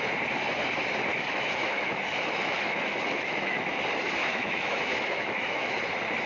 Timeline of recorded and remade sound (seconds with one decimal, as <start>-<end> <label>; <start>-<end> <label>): 0.0-1.1 recorded; 1.1-3.8 remade; 3.8-4.2 recorded; 4.2-5.8 remade; 5.8-6.3 recorded